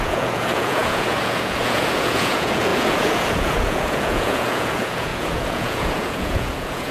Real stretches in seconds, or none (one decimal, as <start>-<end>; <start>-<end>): none